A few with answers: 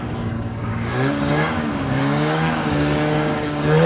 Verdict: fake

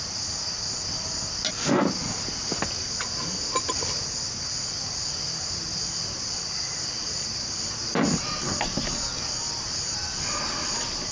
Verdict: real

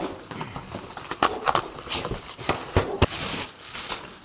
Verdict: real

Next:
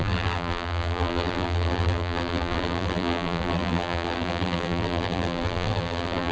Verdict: fake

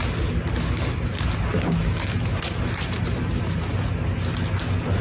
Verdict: real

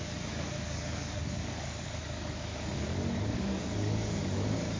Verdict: fake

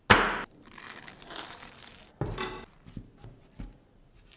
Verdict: real